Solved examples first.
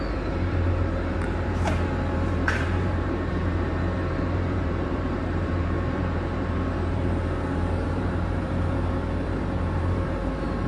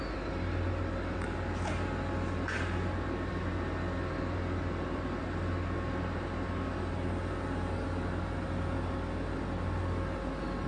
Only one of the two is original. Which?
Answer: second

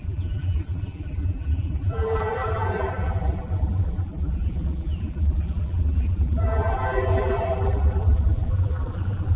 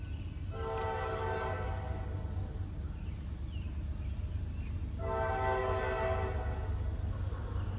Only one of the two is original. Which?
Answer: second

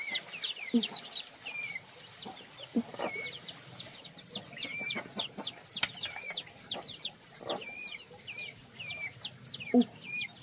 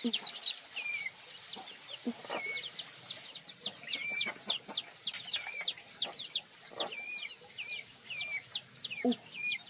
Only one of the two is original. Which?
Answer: second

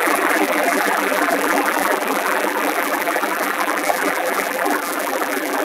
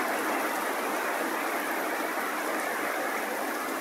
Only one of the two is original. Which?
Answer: second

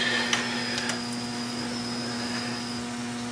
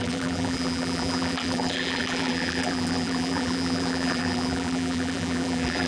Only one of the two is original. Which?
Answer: first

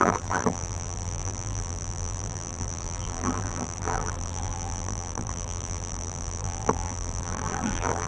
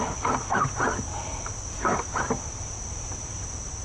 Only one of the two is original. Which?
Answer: second